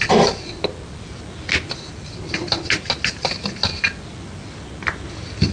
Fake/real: real